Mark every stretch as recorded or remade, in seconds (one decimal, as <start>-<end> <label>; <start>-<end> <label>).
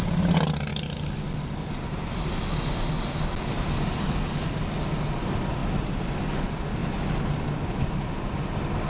0.0-8.9 recorded